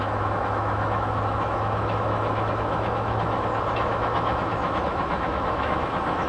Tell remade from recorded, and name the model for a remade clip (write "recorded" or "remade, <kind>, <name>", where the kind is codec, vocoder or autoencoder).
remade, autoencoder, DAC-VAE